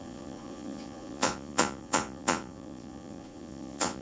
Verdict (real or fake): fake